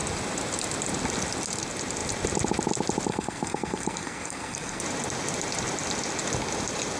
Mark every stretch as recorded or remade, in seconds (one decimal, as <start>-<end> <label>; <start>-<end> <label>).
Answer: 0.0-3.1 recorded; 3.1-4.8 remade; 4.8-7.0 recorded